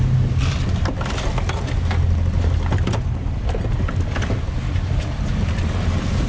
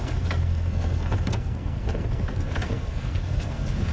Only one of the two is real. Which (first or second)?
first